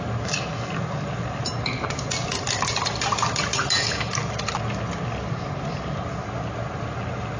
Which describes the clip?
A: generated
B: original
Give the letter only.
B